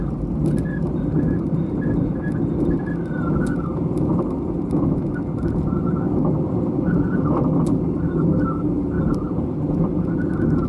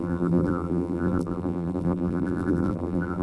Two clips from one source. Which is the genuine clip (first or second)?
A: first